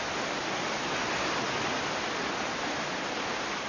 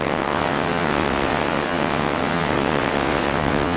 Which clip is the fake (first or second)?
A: second